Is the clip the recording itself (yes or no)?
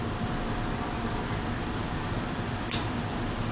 no